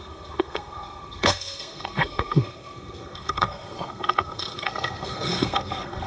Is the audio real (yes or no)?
no